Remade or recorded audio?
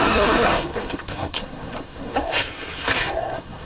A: remade